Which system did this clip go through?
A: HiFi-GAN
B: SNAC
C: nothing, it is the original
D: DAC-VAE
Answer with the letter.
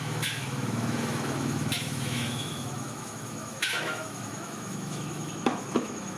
D